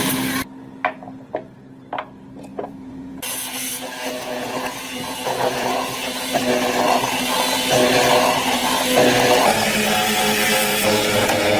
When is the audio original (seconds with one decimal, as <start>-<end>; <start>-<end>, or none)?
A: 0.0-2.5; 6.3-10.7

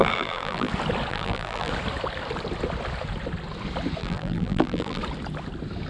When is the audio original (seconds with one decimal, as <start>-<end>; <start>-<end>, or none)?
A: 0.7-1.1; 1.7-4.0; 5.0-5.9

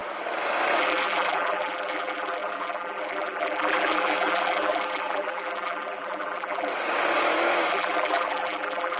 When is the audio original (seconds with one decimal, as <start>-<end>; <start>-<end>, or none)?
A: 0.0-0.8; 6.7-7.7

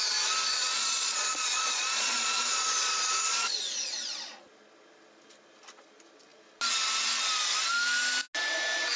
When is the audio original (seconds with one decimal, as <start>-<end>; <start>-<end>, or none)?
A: 0.0-0.5; 4.5-9.0

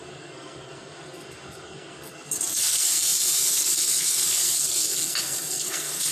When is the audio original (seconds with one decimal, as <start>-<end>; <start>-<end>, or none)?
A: none

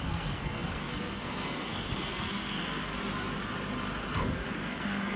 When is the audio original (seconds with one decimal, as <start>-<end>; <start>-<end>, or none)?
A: 2.9-4.1

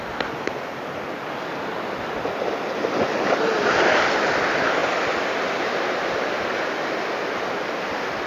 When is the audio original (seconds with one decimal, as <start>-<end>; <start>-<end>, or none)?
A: 0.0-8.3

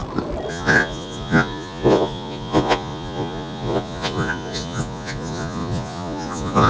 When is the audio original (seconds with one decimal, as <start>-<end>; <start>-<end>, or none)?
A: 0.0-0.5